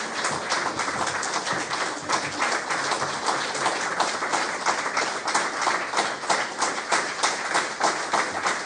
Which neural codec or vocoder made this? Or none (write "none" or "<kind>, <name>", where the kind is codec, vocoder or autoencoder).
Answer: none